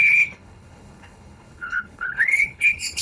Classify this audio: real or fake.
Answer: fake